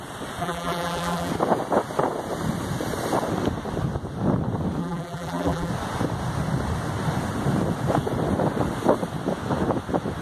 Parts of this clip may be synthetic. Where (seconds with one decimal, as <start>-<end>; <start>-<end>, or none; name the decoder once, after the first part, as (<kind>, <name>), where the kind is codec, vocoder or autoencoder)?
0.4-1.3 (vocoder, BigVGAN v2); 4.8-5.7